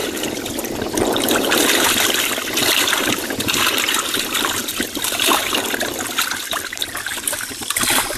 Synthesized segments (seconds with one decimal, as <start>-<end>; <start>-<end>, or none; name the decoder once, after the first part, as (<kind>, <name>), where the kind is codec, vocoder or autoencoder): 0.0-8.2 (vocoder, BigVGAN v2)